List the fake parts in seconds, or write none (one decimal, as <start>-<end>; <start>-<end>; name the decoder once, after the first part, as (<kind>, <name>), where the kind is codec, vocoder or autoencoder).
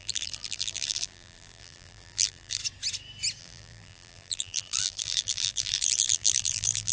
0.0-2.6 (vocoder, BigVGAN v2); 3.4-6.9